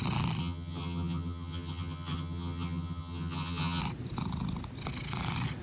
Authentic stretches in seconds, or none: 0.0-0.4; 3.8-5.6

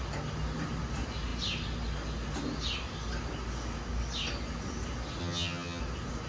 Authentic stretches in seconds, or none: 0.0-5.2; 5.8-6.3

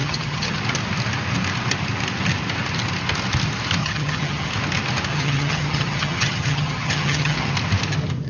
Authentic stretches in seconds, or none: 0.6-3.8; 4.5-5.1; 7.5-8.3

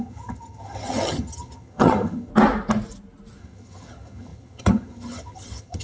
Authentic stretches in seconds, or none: 2.3-3.4

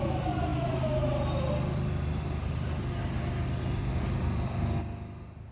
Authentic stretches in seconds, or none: 0.0-5.5

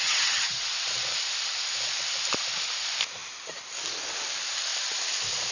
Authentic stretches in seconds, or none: 0.6-5.5

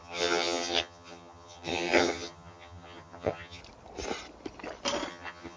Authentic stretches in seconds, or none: 3.6-5.1